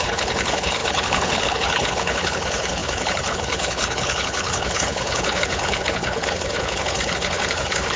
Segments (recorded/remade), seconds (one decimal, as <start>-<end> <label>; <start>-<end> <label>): 0.0-8.0 remade